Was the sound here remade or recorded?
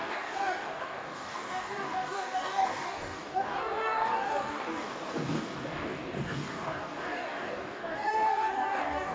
remade